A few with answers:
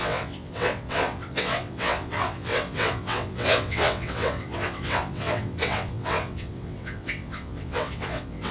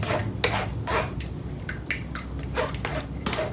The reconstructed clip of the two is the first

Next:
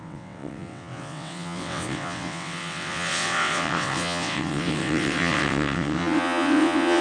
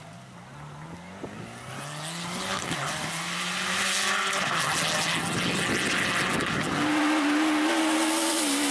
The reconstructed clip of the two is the first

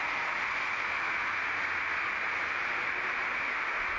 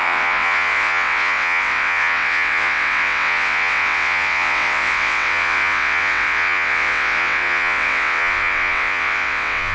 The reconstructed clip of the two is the second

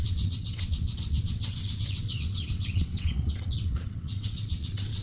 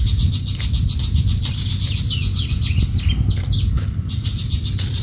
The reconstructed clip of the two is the first